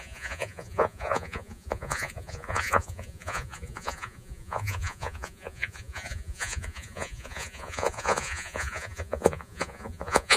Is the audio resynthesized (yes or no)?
yes